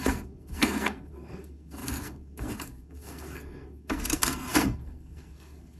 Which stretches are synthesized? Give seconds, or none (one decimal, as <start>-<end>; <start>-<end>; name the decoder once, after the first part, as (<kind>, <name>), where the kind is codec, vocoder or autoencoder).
0.0-5.8 (codec, SNAC)